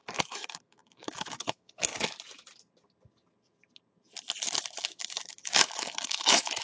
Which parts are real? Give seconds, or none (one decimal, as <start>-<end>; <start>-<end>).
1.9-4.8